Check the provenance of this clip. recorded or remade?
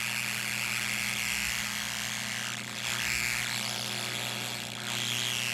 recorded